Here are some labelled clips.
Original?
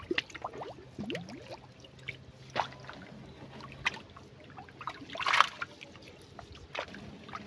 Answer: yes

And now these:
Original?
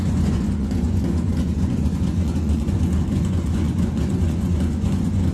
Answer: no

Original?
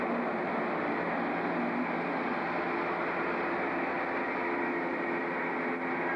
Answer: yes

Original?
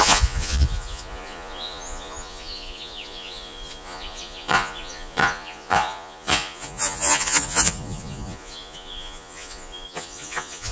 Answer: no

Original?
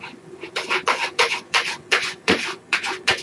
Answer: no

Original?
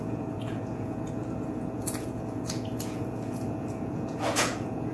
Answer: no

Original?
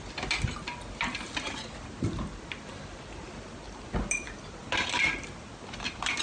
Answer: yes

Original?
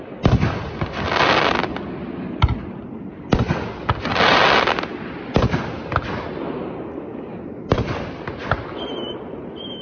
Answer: yes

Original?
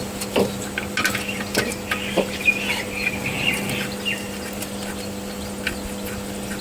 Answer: yes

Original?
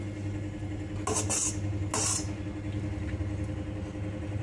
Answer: yes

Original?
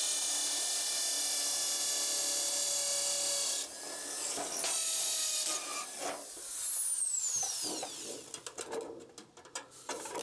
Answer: yes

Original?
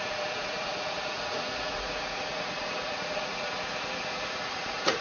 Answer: no